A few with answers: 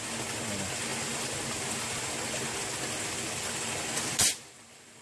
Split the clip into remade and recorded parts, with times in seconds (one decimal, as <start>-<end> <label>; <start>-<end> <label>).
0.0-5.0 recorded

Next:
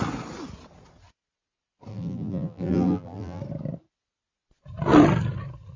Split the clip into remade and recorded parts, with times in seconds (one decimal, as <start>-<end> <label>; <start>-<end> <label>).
0.0-1.9 recorded; 1.9-3.4 remade; 3.4-5.8 recorded

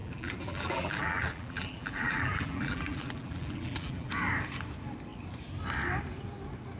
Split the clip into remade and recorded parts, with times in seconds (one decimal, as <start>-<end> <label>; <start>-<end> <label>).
0.0-4.1 remade; 4.1-6.8 recorded

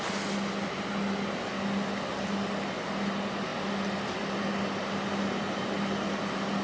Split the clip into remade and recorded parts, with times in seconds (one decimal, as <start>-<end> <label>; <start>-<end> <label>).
0.0-6.6 recorded